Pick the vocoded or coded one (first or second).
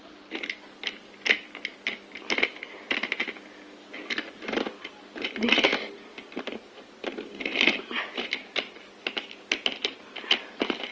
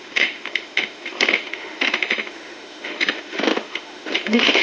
second